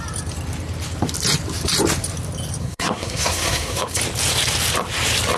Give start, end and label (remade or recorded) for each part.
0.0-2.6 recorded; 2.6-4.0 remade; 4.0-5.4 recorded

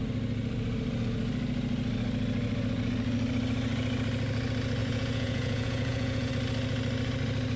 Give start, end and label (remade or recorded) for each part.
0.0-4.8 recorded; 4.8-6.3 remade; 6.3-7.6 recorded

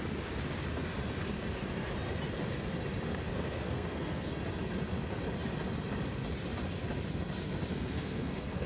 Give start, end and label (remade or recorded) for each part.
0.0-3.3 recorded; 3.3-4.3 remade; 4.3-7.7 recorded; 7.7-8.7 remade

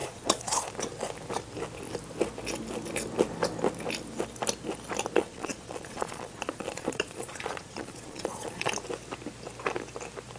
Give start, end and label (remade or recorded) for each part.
0.0-0.7 remade; 0.7-5.2 recorded; 5.2-8.7 remade; 8.7-10.4 recorded

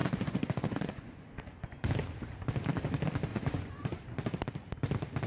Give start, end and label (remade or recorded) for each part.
0.0-1.9 remade; 1.9-3.3 recorded; 3.3-4.0 remade; 4.0-5.3 recorded